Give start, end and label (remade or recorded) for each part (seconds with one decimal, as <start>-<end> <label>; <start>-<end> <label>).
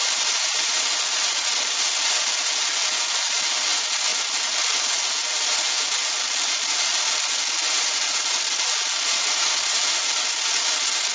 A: 0.0-11.1 recorded